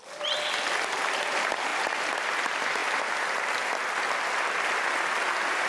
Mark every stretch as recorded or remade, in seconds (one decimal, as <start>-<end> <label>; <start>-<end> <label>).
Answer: 0.0-5.7 recorded